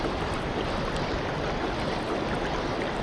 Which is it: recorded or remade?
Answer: recorded